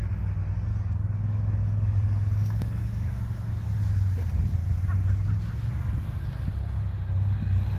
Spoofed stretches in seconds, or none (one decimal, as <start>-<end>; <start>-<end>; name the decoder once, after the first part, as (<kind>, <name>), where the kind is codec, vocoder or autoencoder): 0.7-3.8 (codec, DAC)